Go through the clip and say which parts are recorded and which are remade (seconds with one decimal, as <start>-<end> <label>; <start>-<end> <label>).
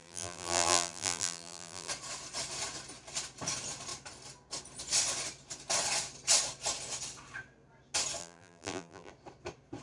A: 0.0-1.9 remade; 1.9-8.2 recorded; 8.2-9.1 remade; 9.1-9.8 recorded